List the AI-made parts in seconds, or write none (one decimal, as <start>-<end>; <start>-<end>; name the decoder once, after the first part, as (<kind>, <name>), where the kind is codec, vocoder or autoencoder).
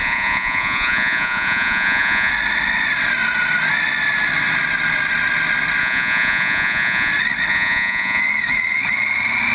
0.0-2.3 (vocoder, Vocos); 5.8-7.1; 7.5-8.2